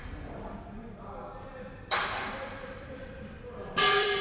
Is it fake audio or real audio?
fake